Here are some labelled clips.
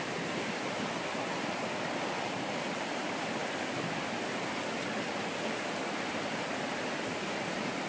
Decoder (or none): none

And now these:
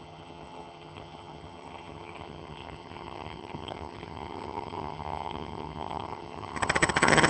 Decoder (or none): vocoder, HiFi-GAN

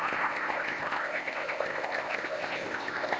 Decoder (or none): codec, ZipCodec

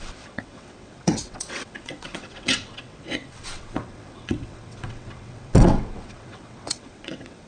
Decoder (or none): vocoder, WaveNeXt